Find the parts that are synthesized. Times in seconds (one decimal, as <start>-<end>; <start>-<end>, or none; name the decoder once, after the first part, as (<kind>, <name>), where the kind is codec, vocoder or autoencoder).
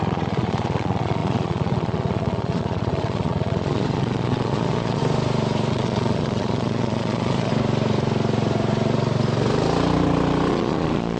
0.0-5.0 (vocoder, Vocos); 5.7-7.5; 10.5-11.2